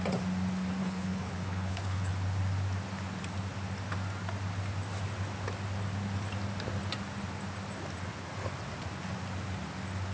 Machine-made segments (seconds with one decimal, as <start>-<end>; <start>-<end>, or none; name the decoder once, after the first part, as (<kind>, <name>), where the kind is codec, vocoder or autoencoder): 0.8-2.1 (codec, HILCodec)

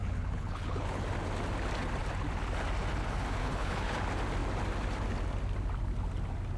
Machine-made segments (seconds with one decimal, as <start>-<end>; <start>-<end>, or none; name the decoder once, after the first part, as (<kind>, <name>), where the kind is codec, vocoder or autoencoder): 0.0-1.0 (codec, HILCodec); 3.4-4.0

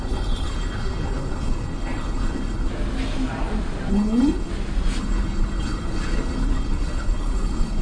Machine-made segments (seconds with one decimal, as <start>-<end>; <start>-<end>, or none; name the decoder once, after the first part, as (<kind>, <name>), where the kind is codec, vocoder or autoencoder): 0.0-2.7 (codec, HILCodec); 3.9-4.5; 5.0-7.8